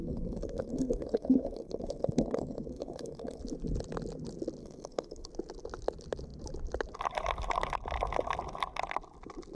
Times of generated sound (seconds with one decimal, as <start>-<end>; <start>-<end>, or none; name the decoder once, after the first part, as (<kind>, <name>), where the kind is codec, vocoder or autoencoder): 0.0-3.4 (codec, SNAC); 4.6-5.3